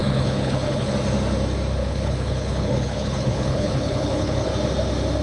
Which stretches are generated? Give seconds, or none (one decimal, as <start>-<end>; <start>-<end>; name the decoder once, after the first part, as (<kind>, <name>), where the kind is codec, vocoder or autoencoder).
0.0-0.9 (codec, HILCodec); 1.8-4.5